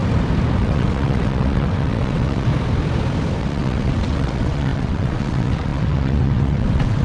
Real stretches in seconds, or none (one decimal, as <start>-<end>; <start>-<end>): 0.0-0.6; 2.5-3.4